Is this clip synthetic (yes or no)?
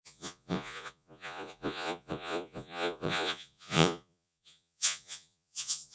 yes